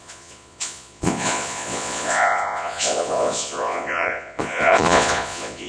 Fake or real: fake